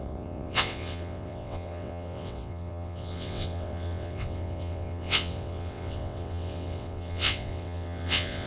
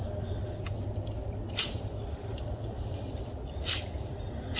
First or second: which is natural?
second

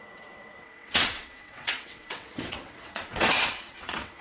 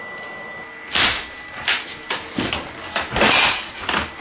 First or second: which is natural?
second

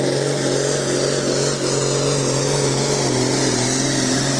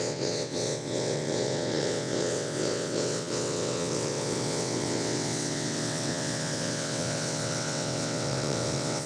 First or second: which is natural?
first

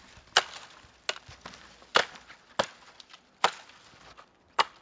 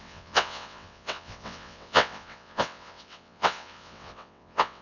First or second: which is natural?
first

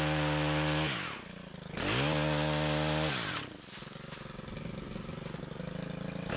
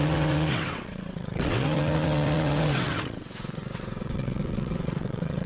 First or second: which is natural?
first